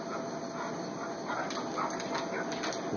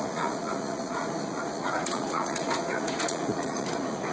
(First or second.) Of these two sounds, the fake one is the second